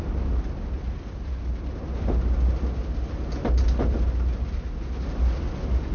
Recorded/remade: recorded